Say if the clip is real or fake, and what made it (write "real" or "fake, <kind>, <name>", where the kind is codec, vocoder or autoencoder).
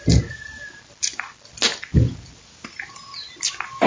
real